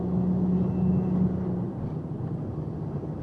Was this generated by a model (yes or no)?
no